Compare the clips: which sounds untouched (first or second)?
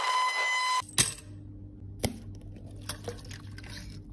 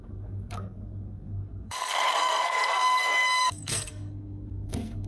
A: first